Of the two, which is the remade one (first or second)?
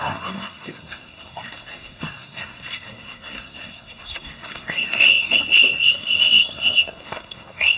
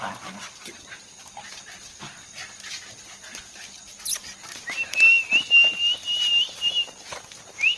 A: first